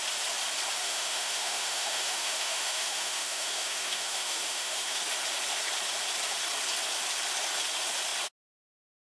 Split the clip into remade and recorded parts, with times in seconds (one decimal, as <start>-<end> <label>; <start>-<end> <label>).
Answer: 0.0-0.8 recorded; 0.8-5.0 remade; 5.0-9.1 recorded